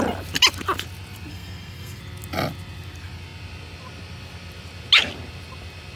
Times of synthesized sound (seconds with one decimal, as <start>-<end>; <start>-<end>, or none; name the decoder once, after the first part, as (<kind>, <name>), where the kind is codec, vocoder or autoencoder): 1.3-2.0 (codec, SNAC)